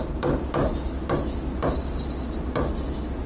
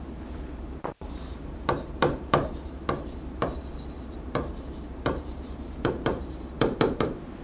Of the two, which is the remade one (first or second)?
second